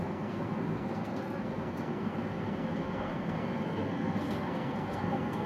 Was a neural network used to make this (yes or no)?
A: yes